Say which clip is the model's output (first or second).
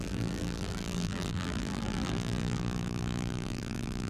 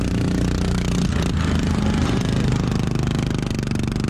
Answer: first